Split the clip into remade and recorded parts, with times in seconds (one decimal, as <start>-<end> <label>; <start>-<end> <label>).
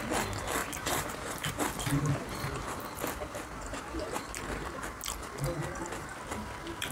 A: 0.0-0.6 recorded; 0.6-4.4 remade; 4.4-6.9 recorded